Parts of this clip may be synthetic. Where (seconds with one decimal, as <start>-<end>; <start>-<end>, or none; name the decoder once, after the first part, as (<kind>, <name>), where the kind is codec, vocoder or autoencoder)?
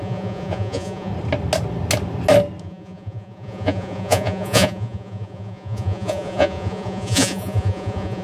0.0-1.1 (vocoder, Vocos); 2.6-8.2